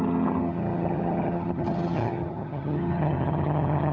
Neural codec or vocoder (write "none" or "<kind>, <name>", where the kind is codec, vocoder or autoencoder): vocoder, HiFi-GAN